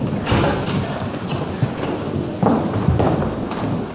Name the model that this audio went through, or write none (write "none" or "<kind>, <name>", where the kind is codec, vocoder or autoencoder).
none